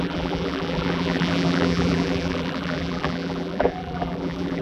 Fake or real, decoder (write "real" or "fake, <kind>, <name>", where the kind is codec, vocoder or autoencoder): fake, vocoder, BigVGAN v2